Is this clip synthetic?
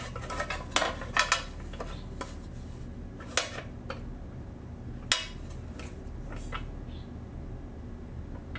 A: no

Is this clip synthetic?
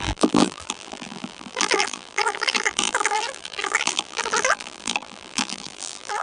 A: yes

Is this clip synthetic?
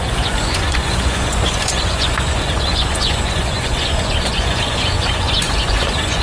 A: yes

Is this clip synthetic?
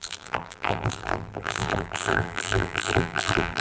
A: yes